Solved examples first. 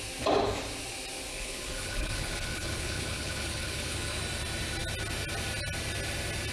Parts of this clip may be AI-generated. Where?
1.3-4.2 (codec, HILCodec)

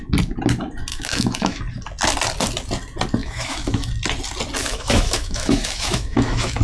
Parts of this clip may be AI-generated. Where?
0.9-1.6 (autoencoder, DAC-VAE); 3.2-3.9; 4.6-6.6

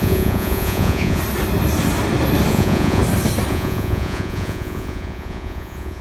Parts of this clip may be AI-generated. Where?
0.0-1.2 (vocoder, Vocos); 2.5-3.0; 3.5-6.0

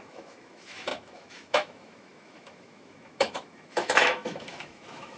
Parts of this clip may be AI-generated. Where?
0.0-5.2 (autoencoder, DAC-VAE)

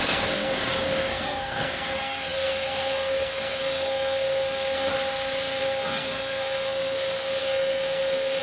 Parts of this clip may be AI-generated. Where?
0.0-4.9 (codec, SNAC); 5.6-8.4

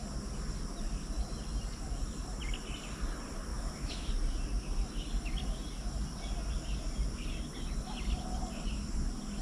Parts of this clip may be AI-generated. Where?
3.5-4.1 (autoencoder, DAC-VAE)

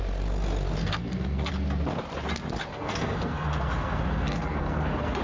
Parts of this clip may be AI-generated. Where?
0.8-1.5 (codec, SNAC); 2.7-5.2

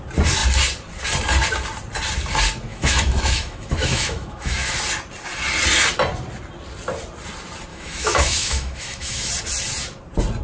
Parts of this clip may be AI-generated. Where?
2.7-4.7 (autoencoder, DAC-VAE); 7.7-9.3